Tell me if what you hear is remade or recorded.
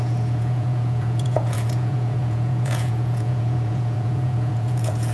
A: remade